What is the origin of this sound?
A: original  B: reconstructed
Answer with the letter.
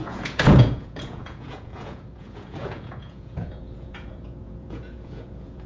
B